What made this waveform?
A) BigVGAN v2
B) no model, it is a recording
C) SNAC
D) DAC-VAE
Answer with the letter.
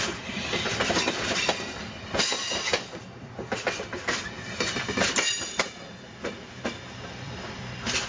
A